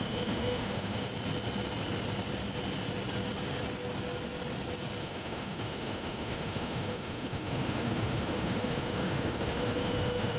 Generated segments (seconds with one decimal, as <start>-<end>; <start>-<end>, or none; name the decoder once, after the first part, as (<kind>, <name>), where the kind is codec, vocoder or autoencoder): 0.0-1.1 (autoencoder, DAC-VAE); 5.0-10.4